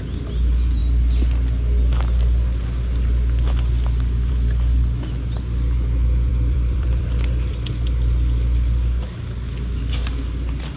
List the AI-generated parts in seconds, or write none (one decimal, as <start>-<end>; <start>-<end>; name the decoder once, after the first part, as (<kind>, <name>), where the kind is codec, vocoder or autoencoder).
6.3-7.5 (vocoder, BigVGAN v2)